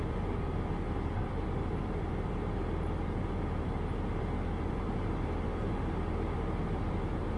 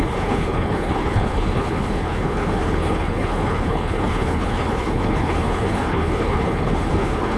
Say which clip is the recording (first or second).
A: first